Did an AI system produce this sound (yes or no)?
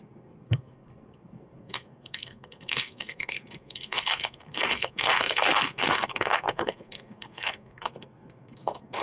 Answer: yes